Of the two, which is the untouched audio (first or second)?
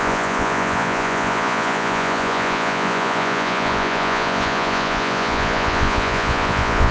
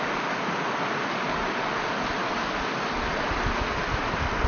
second